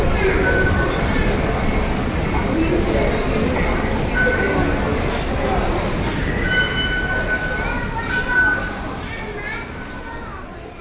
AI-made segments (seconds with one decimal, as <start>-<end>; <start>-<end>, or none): none